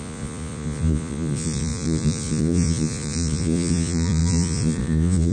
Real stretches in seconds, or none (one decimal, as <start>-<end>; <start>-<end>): none